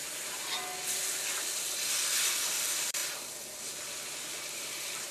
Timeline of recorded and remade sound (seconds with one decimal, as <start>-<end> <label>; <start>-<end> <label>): 0.0-0.6 remade; 0.6-2.4 recorded; 2.4-3.0 remade; 3.0-3.6 recorded; 3.6-5.1 remade